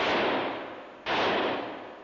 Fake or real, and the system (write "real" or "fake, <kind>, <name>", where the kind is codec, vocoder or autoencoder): real